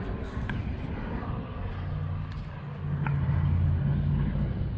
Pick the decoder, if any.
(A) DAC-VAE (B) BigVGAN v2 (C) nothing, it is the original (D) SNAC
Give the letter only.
C